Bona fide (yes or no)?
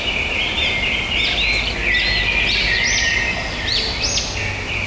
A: yes